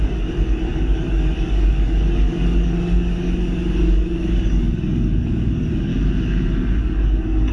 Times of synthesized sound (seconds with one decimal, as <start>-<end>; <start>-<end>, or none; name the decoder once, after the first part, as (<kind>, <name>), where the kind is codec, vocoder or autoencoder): 0.0-5.9 (codec, DAC); 6.8-7.5